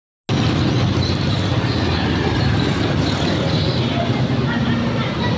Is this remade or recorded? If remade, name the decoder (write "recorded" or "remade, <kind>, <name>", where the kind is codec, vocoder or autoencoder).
recorded